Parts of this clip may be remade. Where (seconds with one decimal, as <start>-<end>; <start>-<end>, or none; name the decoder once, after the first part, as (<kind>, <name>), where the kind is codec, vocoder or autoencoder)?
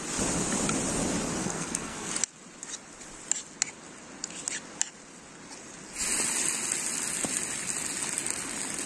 1.4-2.1 (codec, SNAC)